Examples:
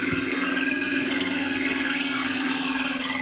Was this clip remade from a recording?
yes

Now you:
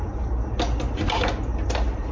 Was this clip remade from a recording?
no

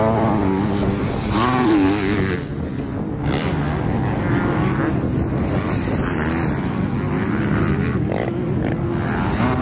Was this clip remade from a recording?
no